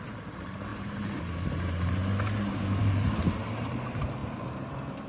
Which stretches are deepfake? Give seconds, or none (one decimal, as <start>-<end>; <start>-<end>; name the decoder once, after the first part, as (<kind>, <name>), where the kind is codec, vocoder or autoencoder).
0.0-2.0 (vocoder, BigVGAN v2); 2.8-5.1